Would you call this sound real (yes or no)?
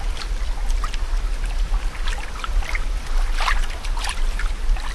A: yes